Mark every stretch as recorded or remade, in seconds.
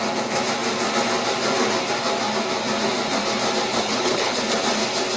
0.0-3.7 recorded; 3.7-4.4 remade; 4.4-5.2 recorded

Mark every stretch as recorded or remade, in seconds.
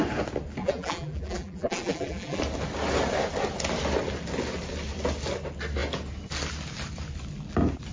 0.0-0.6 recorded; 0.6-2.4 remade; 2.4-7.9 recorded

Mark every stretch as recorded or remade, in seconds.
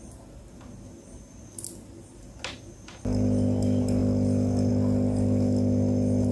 0.0-6.3 recorded